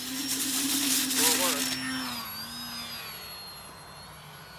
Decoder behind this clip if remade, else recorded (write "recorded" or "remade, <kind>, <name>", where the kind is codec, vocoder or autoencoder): recorded